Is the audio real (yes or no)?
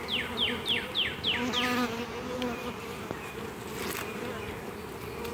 yes